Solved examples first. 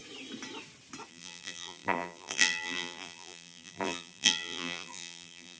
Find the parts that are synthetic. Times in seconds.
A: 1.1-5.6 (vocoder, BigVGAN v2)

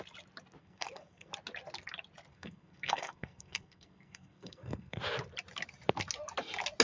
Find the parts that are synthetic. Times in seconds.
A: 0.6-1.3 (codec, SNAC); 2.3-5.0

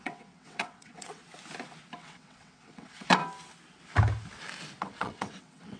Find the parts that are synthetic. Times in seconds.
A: 0.0-1.2 (vocoder, WaveNeXt); 2.0-3.2; 4.8-5.8

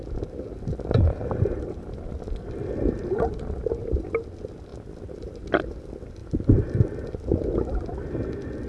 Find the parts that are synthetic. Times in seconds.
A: none